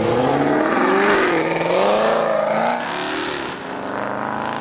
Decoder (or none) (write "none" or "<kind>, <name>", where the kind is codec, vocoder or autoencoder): none